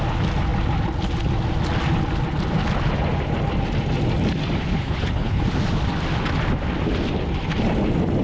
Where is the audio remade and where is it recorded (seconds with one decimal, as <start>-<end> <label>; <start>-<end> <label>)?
0.0-4.7 recorded; 4.7-5.4 remade; 5.4-8.2 recorded